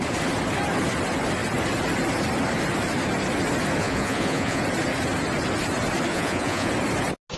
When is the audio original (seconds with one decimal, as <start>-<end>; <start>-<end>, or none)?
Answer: 0.0-3.8; 4.6-6.1; 6.7-7.4